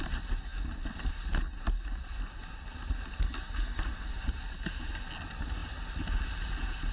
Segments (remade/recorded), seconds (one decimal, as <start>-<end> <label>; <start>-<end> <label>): 0.0-6.9 recorded